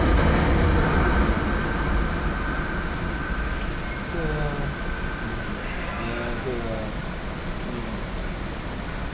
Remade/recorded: recorded